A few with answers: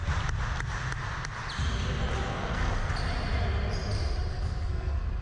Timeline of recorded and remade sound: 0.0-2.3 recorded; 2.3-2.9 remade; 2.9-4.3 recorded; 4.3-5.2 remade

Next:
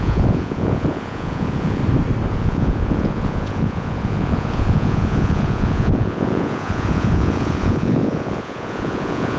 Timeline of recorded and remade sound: 0.0-1.8 remade; 1.8-2.3 recorded; 2.3-9.4 remade

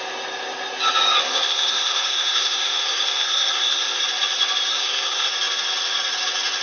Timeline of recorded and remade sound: 0.0-1.2 recorded; 1.2-4.0 remade; 4.0-4.7 recorded; 4.7-5.3 remade; 5.3-6.6 recorded

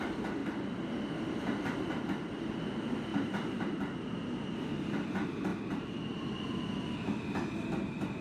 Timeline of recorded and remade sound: 0.0-0.4 recorded; 0.4-2.5 remade; 2.5-3.1 recorded; 3.1-4.0 remade; 4.0-5.5 recorded; 5.5-8.2 remade

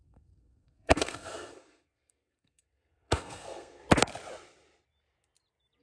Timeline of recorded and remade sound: 0.0-3.8 remade; 3.8-5.8 recorded

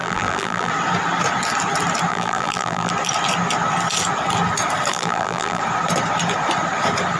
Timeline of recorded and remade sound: 0.0-0.7 remade; 0.7-2.1 recorded; 2.1-2.9 remade; 2.9-4.9 recorded; 4.9-5.6 remade; 5.6-7.2 recorded